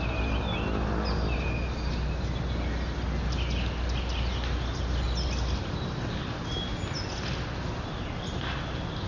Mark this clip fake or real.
real